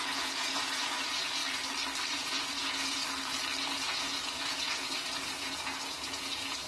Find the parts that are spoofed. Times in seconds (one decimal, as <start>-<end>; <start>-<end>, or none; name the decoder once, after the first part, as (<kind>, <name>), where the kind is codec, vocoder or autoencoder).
0.0-1.4 (vocoder, Vocos); 2.1-3.0; 3.6-6.7

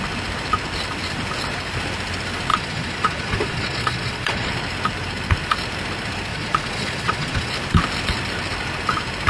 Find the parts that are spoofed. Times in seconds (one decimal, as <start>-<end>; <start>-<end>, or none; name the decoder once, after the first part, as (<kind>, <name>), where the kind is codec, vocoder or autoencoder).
2.5-4.5 (vocoder, Vocos); 6.3-7.5